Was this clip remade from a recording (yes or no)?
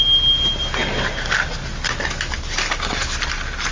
no